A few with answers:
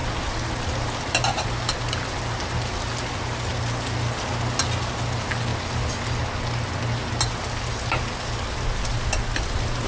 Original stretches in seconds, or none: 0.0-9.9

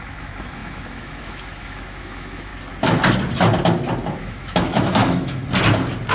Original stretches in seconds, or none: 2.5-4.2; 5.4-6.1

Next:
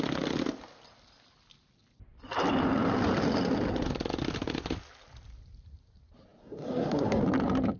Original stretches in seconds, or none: 0.0-6.4; 7.2-7.8

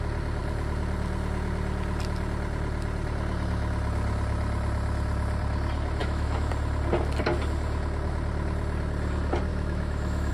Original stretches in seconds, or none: 0.0-6.0; 6.5-9.5